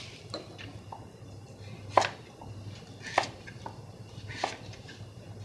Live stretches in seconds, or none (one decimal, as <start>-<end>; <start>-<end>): 0.0-5.4